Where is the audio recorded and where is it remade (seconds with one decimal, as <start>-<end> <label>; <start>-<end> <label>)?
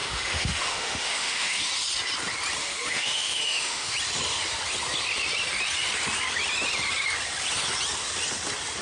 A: 0.0-1.7 remade; 1.7-2.6 recorded; 2.6-3.9 remade; 3.9-8.8 recorded